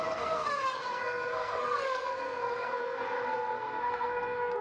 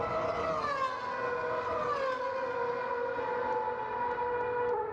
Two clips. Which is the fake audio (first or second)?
first